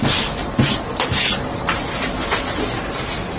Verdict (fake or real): real